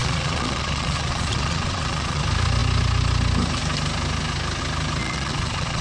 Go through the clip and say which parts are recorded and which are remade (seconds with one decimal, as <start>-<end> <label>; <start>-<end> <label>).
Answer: 0.0-2.2 remade; 2.2-5.0 recorded; 5.0-5.8 remade